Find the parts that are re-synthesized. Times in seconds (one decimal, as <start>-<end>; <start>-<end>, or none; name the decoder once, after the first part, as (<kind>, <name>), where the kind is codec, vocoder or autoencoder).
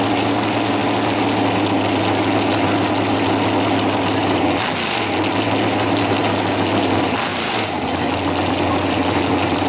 7.3-8.0 (vocoder, BigVGAN v2)